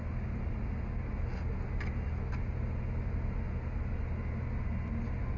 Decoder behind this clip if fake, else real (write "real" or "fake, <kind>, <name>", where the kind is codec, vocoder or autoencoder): real